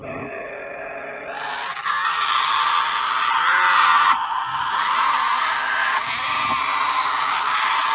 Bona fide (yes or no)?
yes